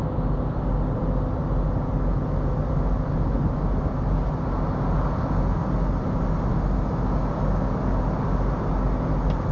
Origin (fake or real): real